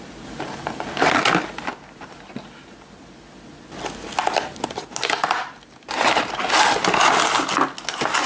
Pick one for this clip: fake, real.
real